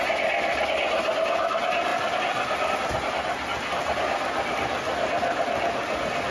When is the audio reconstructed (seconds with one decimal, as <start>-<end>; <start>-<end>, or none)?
1.9-2.7